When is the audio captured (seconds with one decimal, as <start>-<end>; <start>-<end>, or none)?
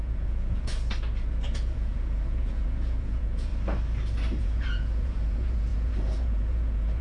0.7-1.5; 3.5-4.4